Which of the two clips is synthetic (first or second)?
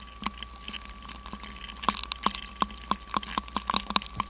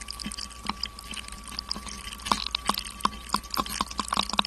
second